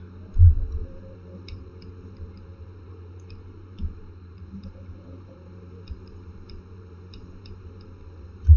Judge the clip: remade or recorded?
remade